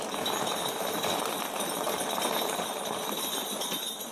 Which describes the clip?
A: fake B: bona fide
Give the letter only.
B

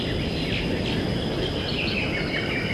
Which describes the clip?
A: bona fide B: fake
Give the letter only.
A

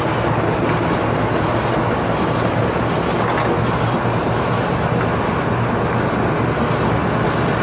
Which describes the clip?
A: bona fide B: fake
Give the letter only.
A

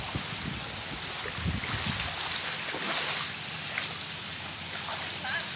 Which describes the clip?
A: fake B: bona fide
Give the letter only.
B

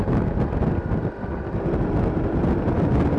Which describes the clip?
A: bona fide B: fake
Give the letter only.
A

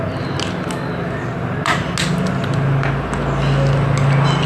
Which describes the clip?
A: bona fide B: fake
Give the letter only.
A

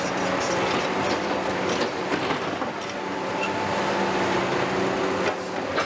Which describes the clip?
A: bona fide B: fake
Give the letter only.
A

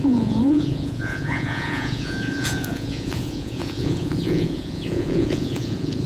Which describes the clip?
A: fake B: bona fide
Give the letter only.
A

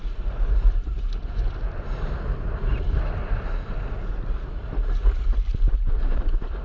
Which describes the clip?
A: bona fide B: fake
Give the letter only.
A